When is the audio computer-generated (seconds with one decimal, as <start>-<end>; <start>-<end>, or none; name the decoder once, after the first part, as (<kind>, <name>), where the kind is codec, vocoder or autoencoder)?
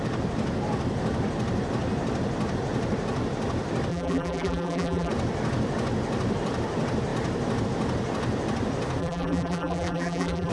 3.9-5.1 (vocoder, BigVGAN v2); 9.0-10.5